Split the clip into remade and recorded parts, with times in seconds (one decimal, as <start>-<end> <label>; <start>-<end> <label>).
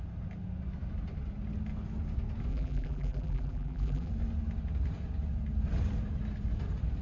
0.0-2.5 recorded; 2.5-4.1 remade; 4.1-7.0 recorded